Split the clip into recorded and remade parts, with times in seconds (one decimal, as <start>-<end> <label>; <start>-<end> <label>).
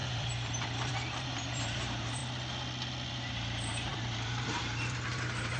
0.0-2.2 remade; 2.2-3.1 recorded; 3.1-5.6 remade